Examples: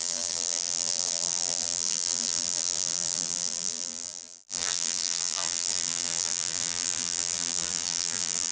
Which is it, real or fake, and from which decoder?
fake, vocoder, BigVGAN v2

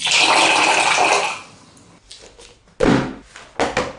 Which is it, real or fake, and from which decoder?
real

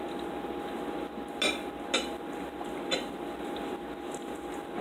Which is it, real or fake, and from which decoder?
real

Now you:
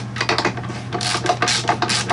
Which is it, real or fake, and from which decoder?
real